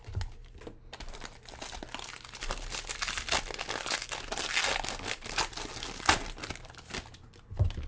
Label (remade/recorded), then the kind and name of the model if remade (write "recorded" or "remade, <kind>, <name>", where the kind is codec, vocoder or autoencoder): recorded